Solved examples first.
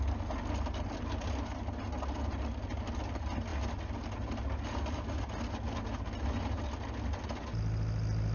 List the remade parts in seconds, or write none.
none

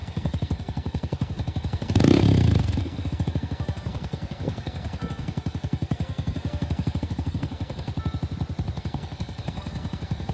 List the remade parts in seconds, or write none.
0.0-7.9 (codec, SNAC); 8.8-10.3

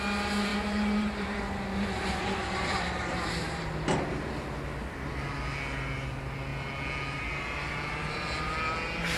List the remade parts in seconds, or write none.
0.5-1.4 (vocoder, BigVGAN v2); 2.4-4.1

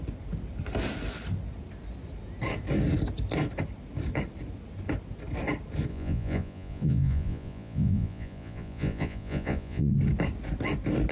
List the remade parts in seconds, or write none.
5.9-9.9 (vocoder, Vocos)

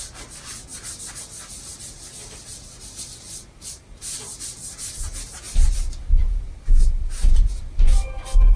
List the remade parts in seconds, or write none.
none

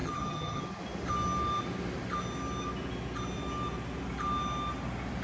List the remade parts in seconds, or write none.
0.0-0.6 (vocoder, HiFi-GAN)

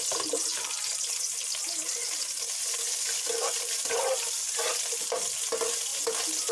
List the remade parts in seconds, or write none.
0.5-4.4 (vocoder, BigVGAN v2)